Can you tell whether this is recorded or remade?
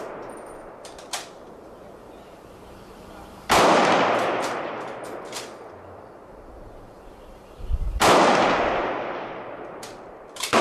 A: remade